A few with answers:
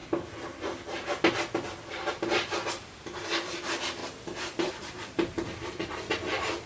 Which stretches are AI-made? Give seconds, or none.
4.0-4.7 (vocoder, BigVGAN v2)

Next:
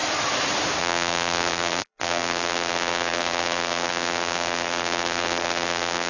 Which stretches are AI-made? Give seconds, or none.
0.8-6.1 (vocoder, BigVGAN v2)

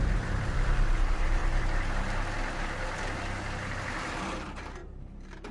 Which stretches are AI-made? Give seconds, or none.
0.0-1.4 (vocoder, BigVGAN v2); 4.2-5.5

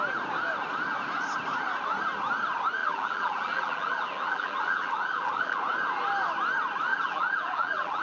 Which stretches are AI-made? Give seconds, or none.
2.8-5.6 (vocoder, BigVGAN v2); 6.9-8.0